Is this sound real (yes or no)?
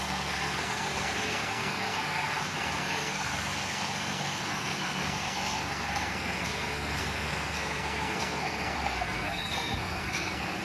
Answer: no